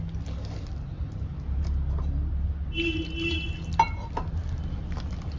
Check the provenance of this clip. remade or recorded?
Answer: recorded